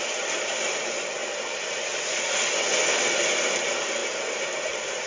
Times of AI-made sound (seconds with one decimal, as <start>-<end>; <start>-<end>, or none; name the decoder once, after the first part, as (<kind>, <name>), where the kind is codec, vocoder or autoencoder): none